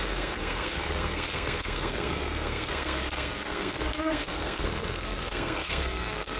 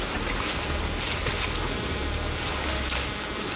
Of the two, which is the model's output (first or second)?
first